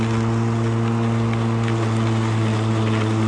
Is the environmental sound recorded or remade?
recorded